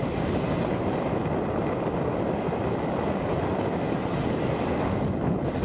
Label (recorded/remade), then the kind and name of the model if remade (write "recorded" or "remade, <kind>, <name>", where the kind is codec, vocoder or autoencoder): recorded